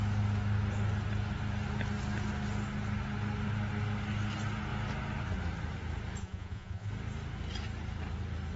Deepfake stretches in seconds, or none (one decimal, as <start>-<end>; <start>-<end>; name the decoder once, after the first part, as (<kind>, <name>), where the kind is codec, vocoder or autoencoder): 6.2-6.9 (vocoder, Vocos)